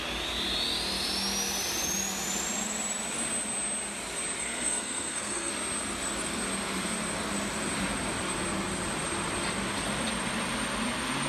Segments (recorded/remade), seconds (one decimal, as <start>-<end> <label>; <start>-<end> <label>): 0.0-4.4 recorded; 4.4-5.5 remade; 5.5-11.3 recorded